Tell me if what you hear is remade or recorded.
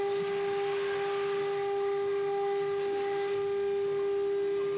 recorded